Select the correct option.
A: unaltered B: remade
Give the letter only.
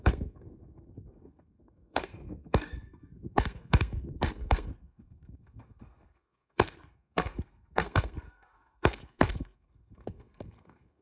B